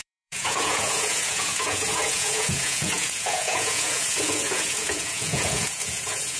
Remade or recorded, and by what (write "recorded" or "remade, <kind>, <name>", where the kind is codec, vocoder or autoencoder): remade, vocoder, Vocos